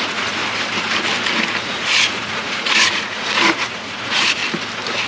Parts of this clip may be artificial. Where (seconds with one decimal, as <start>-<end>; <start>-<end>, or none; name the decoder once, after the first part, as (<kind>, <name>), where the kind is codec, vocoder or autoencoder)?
0.0-0.4 (vocoder, Vocos); 1.6-4.4